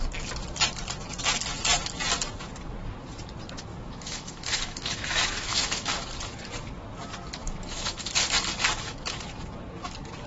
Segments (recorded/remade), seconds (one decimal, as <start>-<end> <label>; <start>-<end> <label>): 0.0-3.7 recorded; 3.7-6.0 remade; 6.0-7.4 recorded; 7.4-8.1 remade; 8.1-10.3 recorded

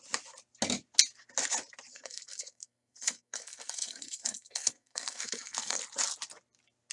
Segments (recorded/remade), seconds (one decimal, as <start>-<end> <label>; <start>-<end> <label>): 0.0-1.9 recorded; 1.9-5.8 remade; 5.8-6.9 recorded

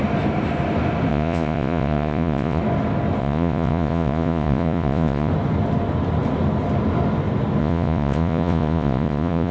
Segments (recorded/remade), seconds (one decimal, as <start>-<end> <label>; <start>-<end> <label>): 0.0-1.1 recorded; 1.1-2.6 remade; 2.6-3.2 recorded; 3.2-5.3 remade; 5.3-7.6 recorded; 7.6-9.5 remade

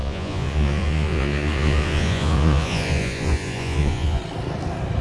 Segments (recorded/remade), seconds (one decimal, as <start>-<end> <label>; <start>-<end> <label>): 0.0-4.2 remade; 4.2-5.0 recorded

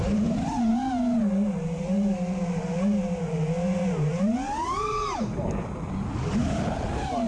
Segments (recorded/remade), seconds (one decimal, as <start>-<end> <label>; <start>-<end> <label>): 0.0-7.3 recorded

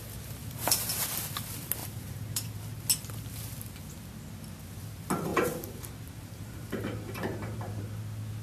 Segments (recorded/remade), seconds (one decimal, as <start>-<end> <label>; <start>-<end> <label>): 0.0-0.4 recorded; 0.4-1.0 remade; 1.0-1.8 recorded; 1.8-2.6 remade; 2.6-5.3 recorded; 5.3-7.8 remade; 7.8-8.4 recorded